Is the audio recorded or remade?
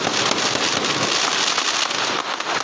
recorded